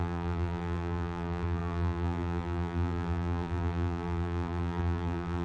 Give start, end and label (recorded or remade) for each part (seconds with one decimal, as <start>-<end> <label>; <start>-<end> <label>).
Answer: 0.0-5.4 remade